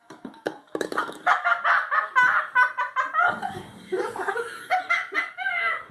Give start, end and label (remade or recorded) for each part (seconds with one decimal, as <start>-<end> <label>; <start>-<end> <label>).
0.0-1.5 remade; 1.5-3.2 recorded; 3.2-4.7 remade; 4.7-5.2 recorded; 5.2-5.9 remade